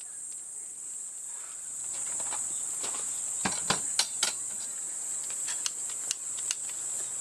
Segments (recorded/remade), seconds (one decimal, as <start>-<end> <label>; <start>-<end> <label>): 0.0-7.2 recorded